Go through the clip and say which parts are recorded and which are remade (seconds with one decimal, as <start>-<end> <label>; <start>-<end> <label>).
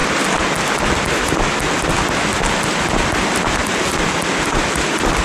0.0-5.2 recorded